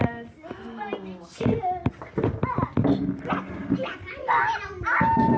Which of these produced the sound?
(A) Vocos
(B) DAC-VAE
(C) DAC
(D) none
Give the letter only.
D